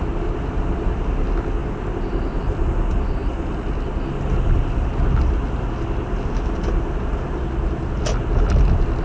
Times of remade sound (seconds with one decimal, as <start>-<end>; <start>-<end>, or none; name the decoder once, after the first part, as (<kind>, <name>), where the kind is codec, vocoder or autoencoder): none

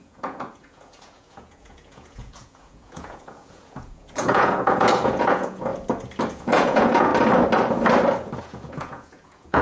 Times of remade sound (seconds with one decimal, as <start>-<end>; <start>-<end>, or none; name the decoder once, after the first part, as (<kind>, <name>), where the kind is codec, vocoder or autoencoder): 0.0-5.7 (vocoder, Vocos); 6.3-7.1; 8.4-9.6

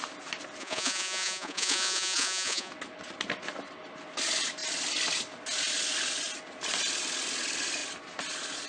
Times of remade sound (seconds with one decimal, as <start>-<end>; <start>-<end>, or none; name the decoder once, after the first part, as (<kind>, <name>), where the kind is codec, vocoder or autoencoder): 0.6-2.7 (vocoder, Vocos)

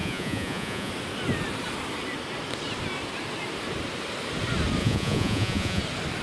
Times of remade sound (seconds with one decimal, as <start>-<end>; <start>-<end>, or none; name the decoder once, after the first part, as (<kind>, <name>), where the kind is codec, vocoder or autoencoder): 0.0-0.9 (vocoder, Vocos); 4.8-5.8

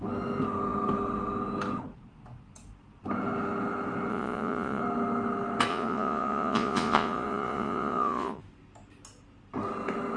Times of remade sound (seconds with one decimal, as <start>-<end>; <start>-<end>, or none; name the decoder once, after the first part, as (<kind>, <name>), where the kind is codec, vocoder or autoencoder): 4.1-4.8 (vocoder, Vocos); 5.7-8.4